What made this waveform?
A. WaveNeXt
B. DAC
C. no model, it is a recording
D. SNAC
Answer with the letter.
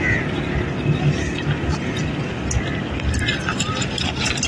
C